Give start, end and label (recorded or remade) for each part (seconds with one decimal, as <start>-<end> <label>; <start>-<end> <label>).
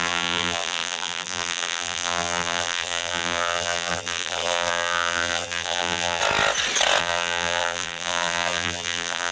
0.0-6.2 remade; 6.2-7.0 recorded; 7.0-9.3 remade